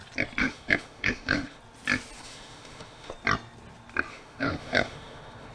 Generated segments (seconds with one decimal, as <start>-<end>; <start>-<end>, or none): 0.4-1.6; 2.2-3.1; 4.1-5.5